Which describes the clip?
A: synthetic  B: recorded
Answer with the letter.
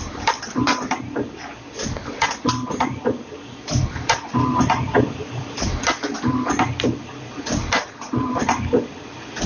A